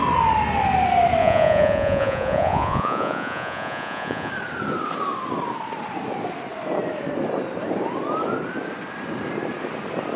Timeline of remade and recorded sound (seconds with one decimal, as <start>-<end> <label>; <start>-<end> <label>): 0.0-1.2 recorded; 1.2-4.3 remade; 4.3-10.2 recorded